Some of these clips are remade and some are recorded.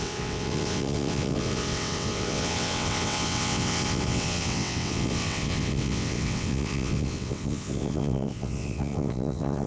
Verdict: remade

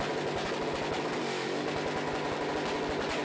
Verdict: recorded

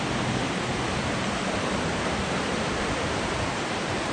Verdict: recorded